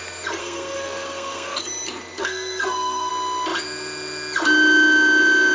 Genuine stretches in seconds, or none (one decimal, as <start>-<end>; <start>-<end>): 0.0-0.4; 1.6-2.2; 3.1-5.5